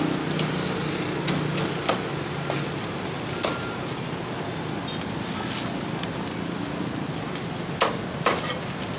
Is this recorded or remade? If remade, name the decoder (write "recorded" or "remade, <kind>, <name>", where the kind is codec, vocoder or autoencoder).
recorded